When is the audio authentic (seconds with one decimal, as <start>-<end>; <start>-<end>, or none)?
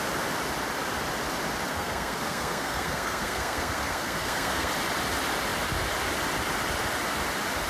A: 0.0-1.7; 4.7-7.7